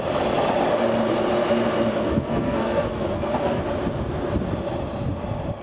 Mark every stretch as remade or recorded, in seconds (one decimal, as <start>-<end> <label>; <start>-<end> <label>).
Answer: 0.0-1.9 recorded; 1.9-3.6 remade; 3.6-5.6 recorded